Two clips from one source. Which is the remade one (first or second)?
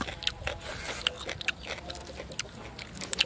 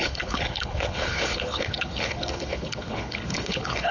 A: second